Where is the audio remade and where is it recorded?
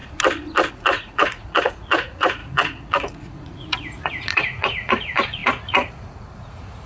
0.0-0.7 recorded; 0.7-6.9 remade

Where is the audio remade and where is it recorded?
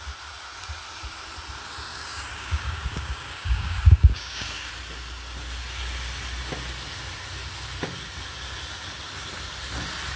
0.0-1.9 recorded; 1.9-4.7 remade; 4.7-10.2 recorded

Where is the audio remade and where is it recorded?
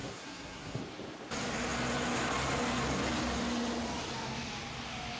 0.0-0.8 remade; 0.8-5.2 recorded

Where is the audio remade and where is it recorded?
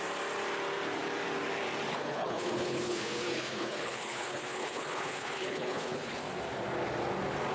0.0-1.9 recorded; 1.9-6.2 remade; 6.2-7.5 recorded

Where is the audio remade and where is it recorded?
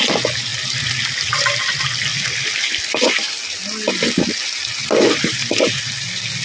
0.0-6.4 recorded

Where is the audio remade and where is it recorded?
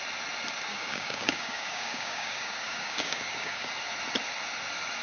0.0-0.7 recorded; 0.7-3.7 remade; 3.7-5.0 recorded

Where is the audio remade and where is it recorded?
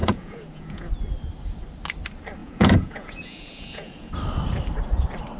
0.0-0.9 remade; 0.9-2.4 recorded; 2.4-4.1 remade; 4.1-5.4 recorded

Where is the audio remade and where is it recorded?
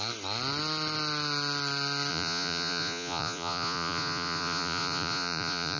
0.0-2.1 recorded; 2.1-5.8 remade